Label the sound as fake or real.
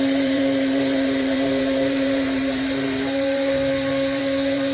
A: fake